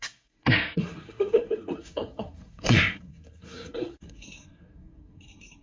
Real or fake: fake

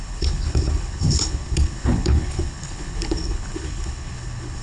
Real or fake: fake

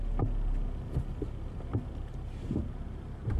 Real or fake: real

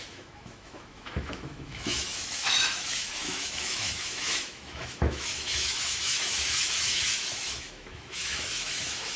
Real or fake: fake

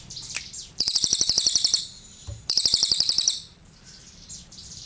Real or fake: fake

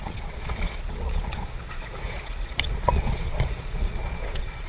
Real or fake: fake